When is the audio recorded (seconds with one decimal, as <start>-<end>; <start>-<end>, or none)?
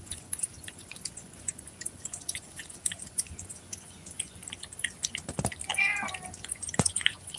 4.4-6.4